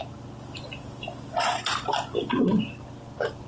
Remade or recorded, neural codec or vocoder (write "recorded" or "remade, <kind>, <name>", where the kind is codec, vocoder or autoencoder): recorded